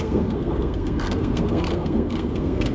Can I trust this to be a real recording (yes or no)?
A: no